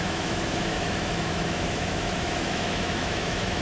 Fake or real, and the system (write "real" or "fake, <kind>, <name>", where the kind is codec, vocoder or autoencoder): fake, autoencoder, DAC-VAE